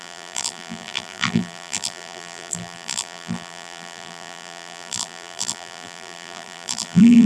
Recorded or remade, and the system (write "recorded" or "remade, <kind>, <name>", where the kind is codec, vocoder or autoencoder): remade, vocoder, BigVGAN v2